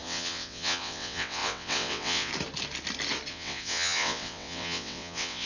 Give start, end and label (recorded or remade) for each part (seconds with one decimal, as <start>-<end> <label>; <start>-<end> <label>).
0.0-2.3 remade; 2.3-3.3 recorded; 3.3-5.5 remade